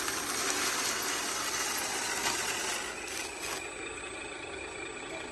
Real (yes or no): yes